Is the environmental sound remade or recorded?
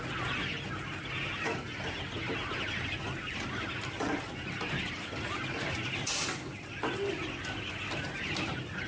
recorded